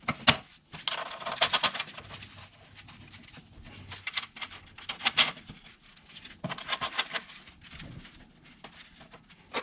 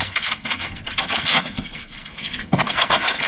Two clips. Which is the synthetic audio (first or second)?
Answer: second